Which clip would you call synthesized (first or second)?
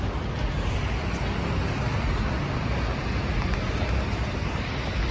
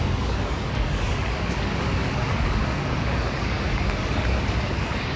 second